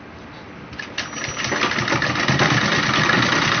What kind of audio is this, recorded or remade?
recorded